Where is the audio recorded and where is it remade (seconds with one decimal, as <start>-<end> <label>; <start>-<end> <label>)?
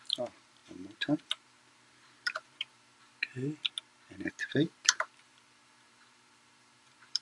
0.0-3.6 remade; 3.6-4.3 recorded; 4.3-7.2 remade